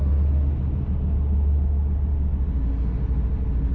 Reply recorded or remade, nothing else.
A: recorded